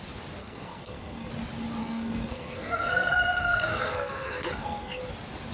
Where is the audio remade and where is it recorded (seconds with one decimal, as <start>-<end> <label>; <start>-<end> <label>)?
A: 0.0-0.4 recorded; 0.4-1.3 remade; 1.3-1.8 recorded; 1.8-5.0 remade; 5.0-5.5 recorded